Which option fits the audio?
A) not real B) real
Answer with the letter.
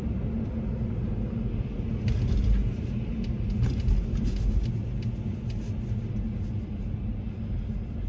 B